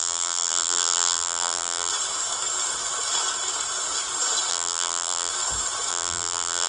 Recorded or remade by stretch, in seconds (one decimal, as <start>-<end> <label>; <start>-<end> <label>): 0.0-1.9 remade; 1.9-4.5 recorded; 4.5-5.3 remade; 5.3-5.9 recorded; 5.9-6.7 remade